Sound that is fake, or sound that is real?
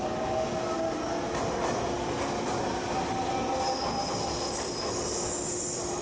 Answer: real